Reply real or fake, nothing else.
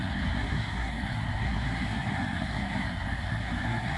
fake